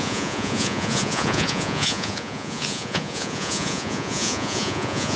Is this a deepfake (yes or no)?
yes